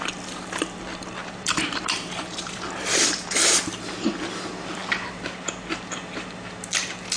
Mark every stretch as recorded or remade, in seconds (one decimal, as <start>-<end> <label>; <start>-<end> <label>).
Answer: 0.0-1.2 recorded; 1.2-3.4 remade; 3.4-7.2 recorded